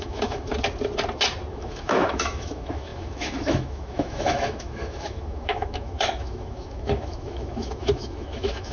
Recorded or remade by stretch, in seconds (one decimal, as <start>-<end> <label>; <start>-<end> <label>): 0.0-0.5 remade; 0.5-1.5 recorded; 1.5-8.7 remade